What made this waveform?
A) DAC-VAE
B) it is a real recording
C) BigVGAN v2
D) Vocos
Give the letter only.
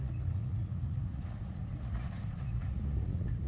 D